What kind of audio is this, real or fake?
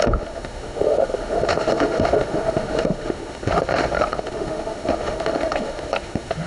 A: fake